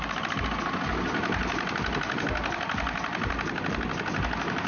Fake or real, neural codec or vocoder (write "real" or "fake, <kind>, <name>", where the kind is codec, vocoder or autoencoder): real